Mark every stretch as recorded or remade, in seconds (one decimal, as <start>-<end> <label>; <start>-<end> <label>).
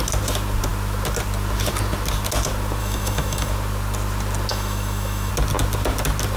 0.0-2.8 recorded; 2.8-3.5 remade; 3.5-4.5 recorded; 4.5-5.3 remade; 5.3-6.4 recorded